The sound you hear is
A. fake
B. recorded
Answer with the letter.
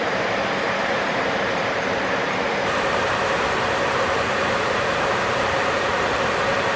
A